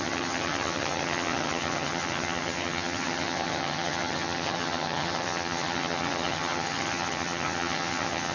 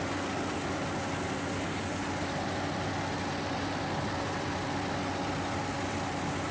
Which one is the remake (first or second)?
first